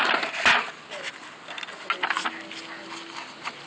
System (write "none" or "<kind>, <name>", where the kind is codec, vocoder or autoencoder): none